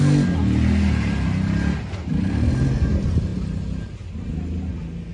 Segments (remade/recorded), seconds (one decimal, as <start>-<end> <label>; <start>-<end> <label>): 0.0-5.1 recorded